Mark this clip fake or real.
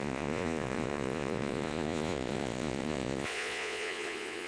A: fake